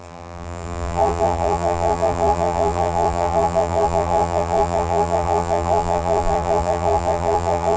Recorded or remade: remade